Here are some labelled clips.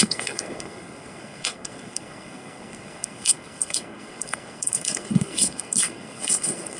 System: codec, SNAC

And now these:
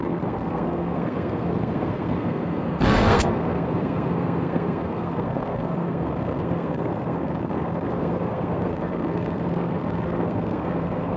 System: codec, SNAC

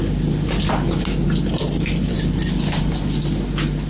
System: none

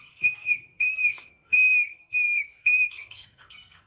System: codec, SNAC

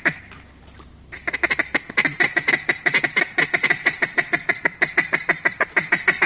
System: none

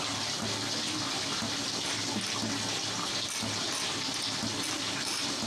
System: none